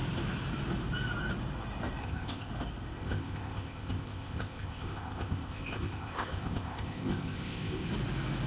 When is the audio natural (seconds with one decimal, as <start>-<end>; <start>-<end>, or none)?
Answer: 0.0-2.0; 2.5-3.0; 7.9-8.5